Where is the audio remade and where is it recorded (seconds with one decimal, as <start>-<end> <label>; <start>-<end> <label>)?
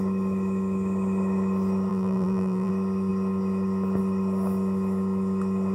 0.0-1.9 recorded; 1.9-2.7 remade; 2.7-5.7 recorded